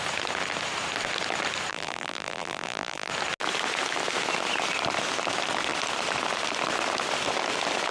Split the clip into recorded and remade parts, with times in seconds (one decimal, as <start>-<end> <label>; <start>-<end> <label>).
0.0-1.7 recorded; 1.7-3.1 remade; 3.1-7.9 recorded